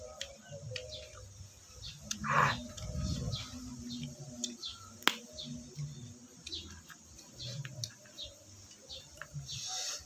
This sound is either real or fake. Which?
real